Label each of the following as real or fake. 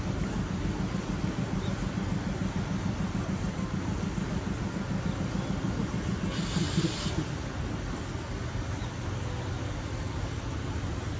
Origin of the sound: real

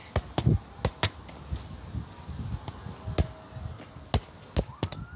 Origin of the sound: real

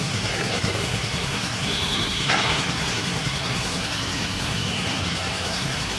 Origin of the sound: fake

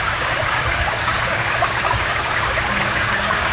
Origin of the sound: fake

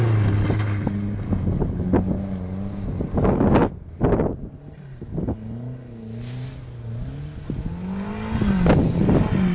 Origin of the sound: real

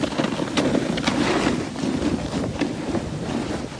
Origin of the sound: real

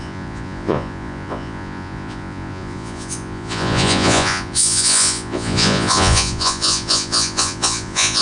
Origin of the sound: fake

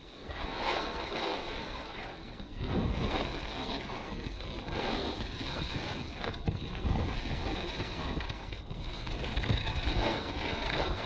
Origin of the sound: fake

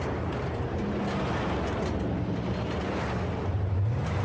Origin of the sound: real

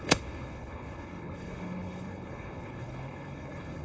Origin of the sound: fake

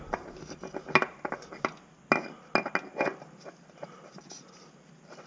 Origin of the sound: real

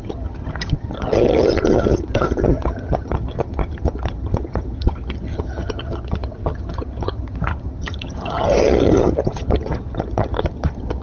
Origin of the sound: fake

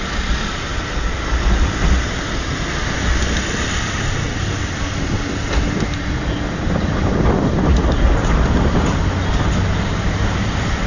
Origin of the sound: real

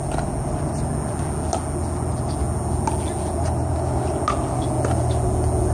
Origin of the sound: real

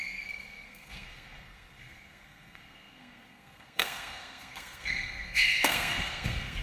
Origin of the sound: fake